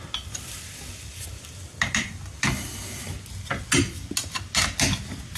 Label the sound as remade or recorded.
recorded